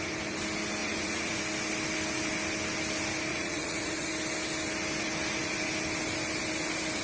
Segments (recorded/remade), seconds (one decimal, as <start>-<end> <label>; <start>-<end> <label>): 0.0-0.8 recorded; 0.8-1.4 remade; 1.4-3.3 recorded; 3.3-4.1 remade; 4.1-7.0 recorded